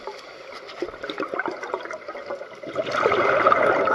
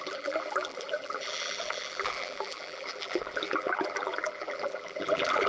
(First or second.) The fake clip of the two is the second